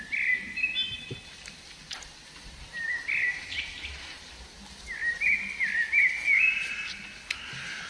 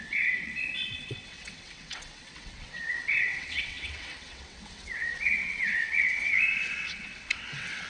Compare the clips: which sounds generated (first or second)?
second